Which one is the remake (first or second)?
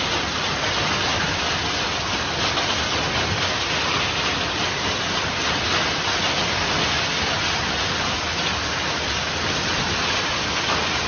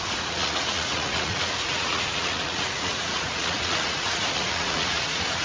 second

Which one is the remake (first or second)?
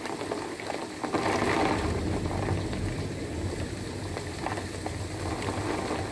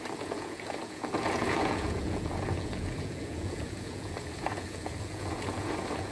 second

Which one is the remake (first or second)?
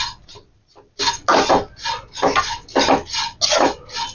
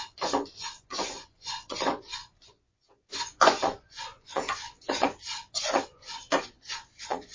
second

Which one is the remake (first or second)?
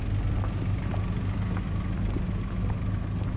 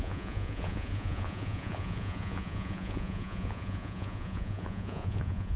second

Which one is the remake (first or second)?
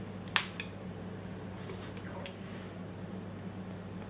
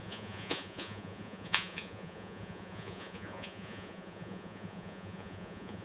second